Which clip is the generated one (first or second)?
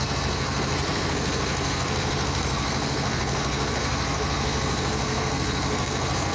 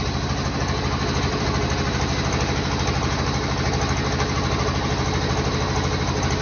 first